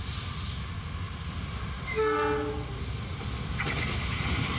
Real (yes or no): yes